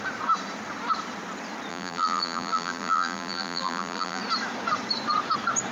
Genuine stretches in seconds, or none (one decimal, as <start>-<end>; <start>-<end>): 0.0-1.7; 4.2-5.7